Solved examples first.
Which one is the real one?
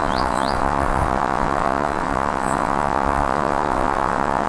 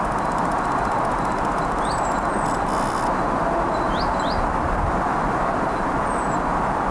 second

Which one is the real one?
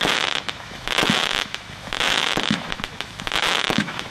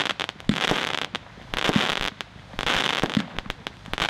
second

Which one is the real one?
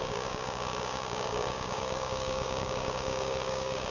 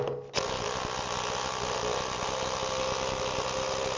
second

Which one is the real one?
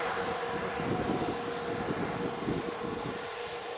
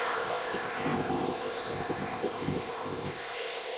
first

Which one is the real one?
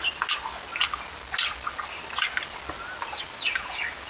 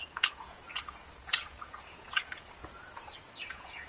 first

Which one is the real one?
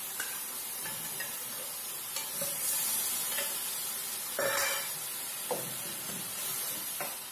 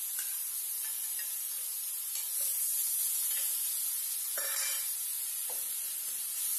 second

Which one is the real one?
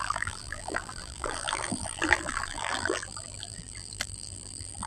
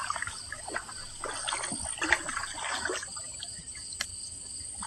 second